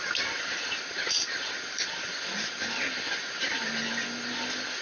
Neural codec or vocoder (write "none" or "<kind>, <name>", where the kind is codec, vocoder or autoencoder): none